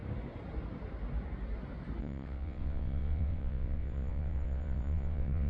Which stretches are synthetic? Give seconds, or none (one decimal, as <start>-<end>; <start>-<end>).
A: 2.0-5.5